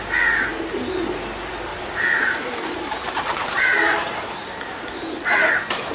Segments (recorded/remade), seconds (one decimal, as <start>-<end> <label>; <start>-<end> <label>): 0.0-1.7 recorded; 1.7-5.2 remade; 5.2-5.9 recorded